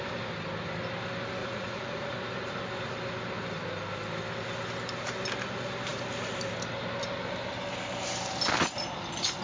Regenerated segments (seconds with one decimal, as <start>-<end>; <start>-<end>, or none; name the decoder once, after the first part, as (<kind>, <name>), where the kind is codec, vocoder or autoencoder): 1.4-2.1 (vocoder, Vocos)